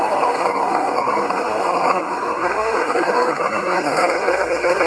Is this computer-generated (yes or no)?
yes